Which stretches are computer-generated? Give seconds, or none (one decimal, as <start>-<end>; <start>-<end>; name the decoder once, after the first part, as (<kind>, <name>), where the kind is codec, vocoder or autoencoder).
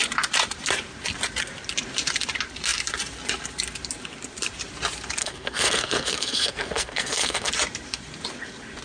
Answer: 5.2-7.5 (codec, SNAC)